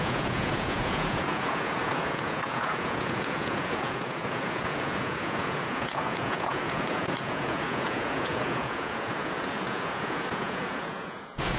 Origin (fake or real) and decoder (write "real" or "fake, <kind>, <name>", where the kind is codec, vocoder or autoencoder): fake, vocoder, Vocos